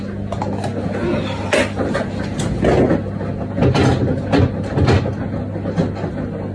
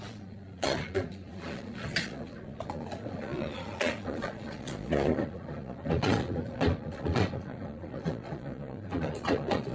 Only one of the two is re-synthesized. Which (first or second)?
second